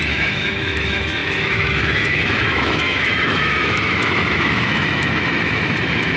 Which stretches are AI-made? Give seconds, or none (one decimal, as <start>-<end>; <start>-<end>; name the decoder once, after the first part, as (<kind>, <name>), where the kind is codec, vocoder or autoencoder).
0.0-6.2 (autoencoder, DAC-VAE)